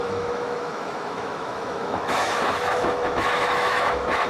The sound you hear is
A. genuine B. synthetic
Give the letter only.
B